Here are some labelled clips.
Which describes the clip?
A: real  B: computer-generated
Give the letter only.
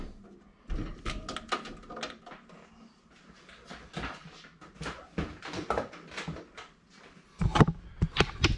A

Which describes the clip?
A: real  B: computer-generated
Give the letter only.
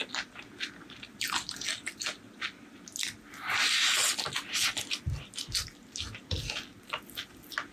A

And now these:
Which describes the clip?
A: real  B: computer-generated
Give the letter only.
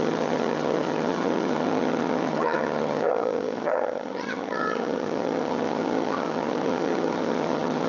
B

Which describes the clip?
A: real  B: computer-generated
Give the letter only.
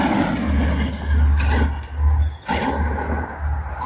A